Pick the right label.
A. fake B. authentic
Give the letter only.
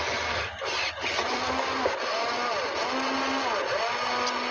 B